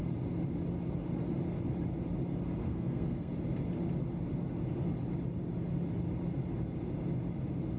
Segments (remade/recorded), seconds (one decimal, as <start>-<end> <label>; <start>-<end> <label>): 0.0-2.6 recorded; 2.6-3.3 remade; 3.3-7.8 recorded